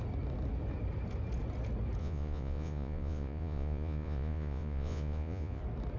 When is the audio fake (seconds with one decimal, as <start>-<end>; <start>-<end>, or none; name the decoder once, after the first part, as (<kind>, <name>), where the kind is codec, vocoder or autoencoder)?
2.0-5.6 (vocoder, Vocos)